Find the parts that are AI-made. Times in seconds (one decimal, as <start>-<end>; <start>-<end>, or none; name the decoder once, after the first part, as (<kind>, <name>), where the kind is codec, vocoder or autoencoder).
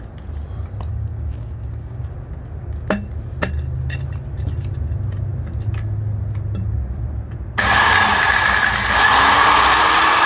0.9-2.0 (codec, DAC)